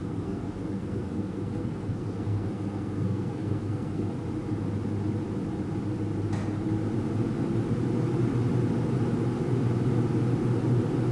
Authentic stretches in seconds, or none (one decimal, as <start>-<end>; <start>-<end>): 4.1-11.1